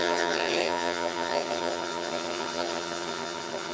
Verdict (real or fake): fake